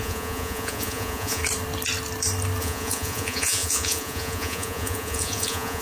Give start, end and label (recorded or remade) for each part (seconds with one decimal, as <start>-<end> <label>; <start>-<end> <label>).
0.0-1.4 remade; 1.4-2.6 recorded; 2.6-5.8 remade